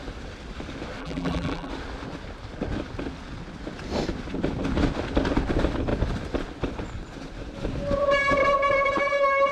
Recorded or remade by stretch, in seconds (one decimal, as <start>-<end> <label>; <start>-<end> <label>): 0.0-1.0 recorded; 1.0-1.7 remade; 1.7-9.5 recorded